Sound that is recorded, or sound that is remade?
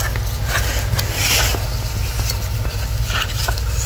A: recorded